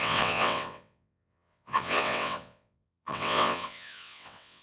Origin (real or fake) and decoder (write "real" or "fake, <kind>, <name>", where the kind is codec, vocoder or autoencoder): fake, vocoder, WaveNeXt